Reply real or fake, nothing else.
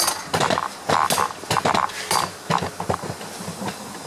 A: real